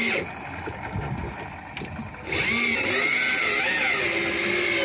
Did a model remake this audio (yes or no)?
no